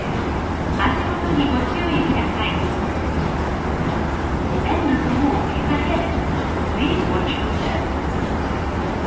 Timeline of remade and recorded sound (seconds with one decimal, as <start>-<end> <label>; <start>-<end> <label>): 0.0-0.5 remade; 0.5-9.1 recorded